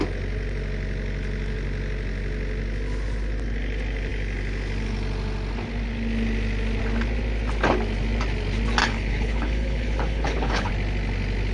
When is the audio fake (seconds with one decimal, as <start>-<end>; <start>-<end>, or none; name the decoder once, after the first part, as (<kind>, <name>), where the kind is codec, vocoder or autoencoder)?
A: 8.8-10.7 (codec, HILCodec)

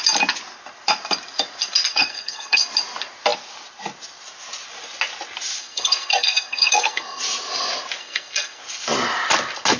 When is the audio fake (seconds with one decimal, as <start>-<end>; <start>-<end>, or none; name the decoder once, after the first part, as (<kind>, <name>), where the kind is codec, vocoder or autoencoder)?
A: 1.9-2.7 (codec, SNAC); 5.6-7.2; 8.0-8.6